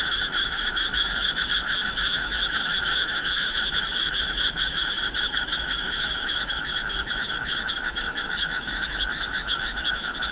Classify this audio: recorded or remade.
remade